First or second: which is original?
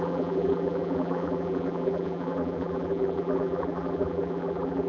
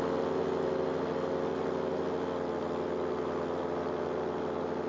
second